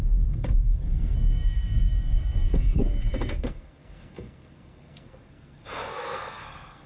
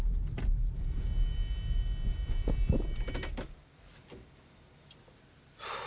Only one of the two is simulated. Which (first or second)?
first